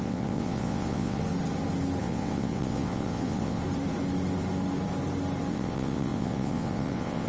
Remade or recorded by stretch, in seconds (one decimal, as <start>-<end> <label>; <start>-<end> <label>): 0.0-1.2 remade; 1.2-2.0 recorded; 2.0-3.6 remade; 3.6-5.5 recorded; 5.5-7.3 remade

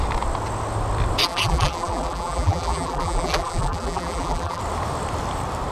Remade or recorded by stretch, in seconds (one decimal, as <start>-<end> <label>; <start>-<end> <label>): 0.0-1.2 recorded; 1.2-4.6 remade; 4.6-5.7 recorded

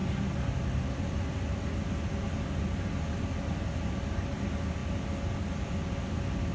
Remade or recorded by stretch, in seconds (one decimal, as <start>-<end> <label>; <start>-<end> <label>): 0.0-6.5 recorded

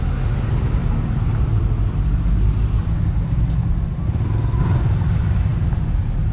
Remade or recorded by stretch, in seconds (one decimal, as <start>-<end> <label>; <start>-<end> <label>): 0.0-6.3 recorded

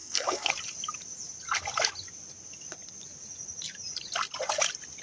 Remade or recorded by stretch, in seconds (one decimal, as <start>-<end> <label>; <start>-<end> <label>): 0.0-0.5 remade; 0.5-5.0 recorded

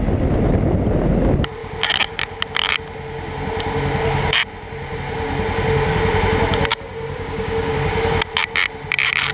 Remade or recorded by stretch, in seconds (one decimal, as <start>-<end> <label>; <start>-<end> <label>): 0.0-6.7 recorded; 6.7-7.7 remade; 7.7-9.3 recorded

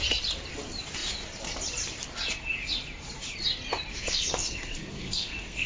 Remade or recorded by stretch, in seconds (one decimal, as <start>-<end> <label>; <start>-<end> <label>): 0.0-3.9 recorded; 3.9-5.7 remade